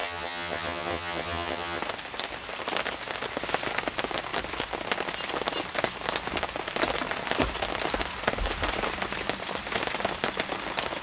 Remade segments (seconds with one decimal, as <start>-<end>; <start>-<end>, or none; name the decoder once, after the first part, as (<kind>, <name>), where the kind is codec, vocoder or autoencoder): 0.0-1.8 (vocoder, HiFi-GAN)